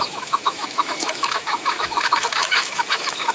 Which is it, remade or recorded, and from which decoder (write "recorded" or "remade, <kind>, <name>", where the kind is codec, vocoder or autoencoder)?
remade, autoencoder, DAC-VAE